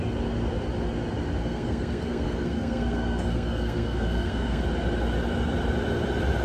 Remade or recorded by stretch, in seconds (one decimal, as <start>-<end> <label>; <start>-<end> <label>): 0.0-1.4 recorded; 1.4-4.6 remade; 4.6-6.4 recorded

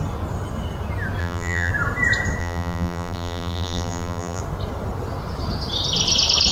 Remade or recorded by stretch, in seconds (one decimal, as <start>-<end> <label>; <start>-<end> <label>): 0.0-1.2 recorded; 1.2-1.7 remade; 1.7-2.4 recorded; 2.4-4.4 remade; 4.4-6.5 recorded

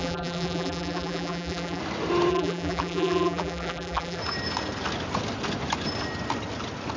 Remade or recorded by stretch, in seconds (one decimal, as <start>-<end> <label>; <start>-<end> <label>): 0.0-1.8 remade; 1.8-2.3 recorded; 2.3-4.2 remade; 4.2-7.0 recorded